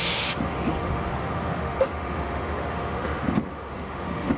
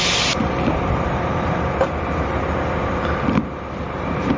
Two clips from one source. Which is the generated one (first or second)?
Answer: first